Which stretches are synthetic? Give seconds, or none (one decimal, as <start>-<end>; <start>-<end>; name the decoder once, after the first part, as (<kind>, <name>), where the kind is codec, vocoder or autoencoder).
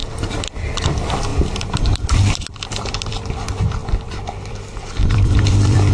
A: 0.0-0.8 (vocoder, BigVGAN v2); 1.3-3.3; 3.8-5.9